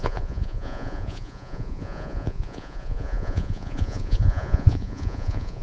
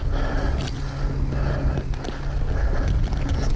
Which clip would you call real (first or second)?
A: second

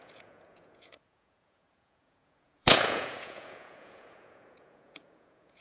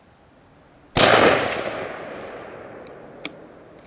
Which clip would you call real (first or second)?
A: second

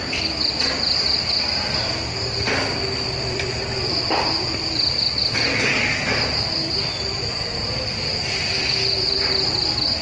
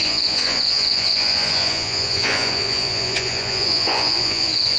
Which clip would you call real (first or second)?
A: first